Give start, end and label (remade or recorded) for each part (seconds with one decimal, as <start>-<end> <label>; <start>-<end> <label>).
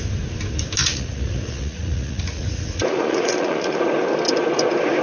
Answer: 0.0-0.8 recorded; 0.8-3.8 remade; 3.8-5.0 recorded